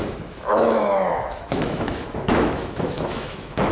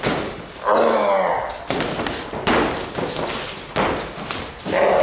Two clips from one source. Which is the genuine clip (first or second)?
second